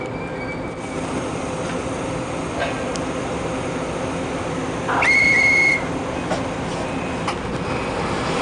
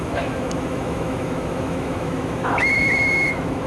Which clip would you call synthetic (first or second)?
second